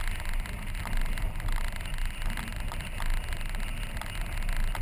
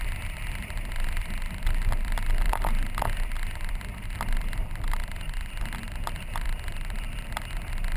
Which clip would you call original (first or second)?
first